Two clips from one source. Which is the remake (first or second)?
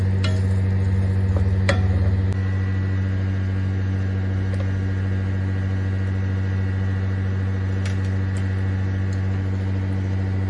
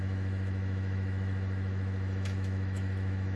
second